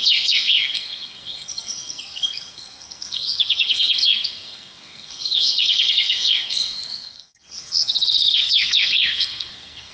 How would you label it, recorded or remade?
remade